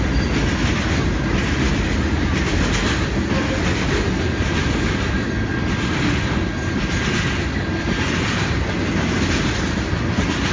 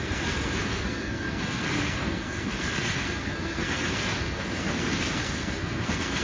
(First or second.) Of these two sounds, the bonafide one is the first